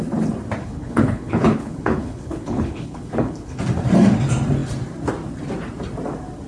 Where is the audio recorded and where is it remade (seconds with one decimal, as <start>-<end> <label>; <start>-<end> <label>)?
0.0-0.6 recorded; 0.6-3.6 remade; 3.6-6.5 recorded